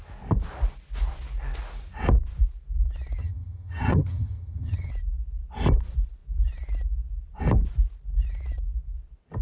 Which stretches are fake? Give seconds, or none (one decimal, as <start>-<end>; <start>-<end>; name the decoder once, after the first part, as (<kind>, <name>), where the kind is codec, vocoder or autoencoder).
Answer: 3.2-4.9 (vocoder, HiFi-GAN)